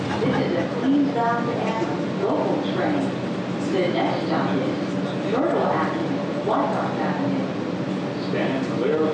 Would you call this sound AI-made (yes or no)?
no